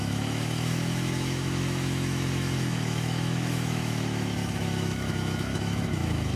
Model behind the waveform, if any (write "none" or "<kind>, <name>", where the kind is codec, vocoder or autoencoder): autoencoder, DAC-VAE